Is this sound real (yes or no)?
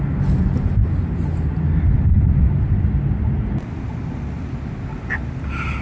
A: yes